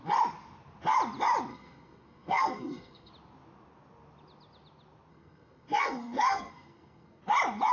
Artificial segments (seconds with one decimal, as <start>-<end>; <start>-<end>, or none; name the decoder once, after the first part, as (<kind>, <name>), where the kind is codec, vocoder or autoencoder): 1.5-3.1 (codec, SNAC); 5.1-7.2